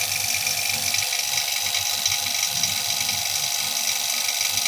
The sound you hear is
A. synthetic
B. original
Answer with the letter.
B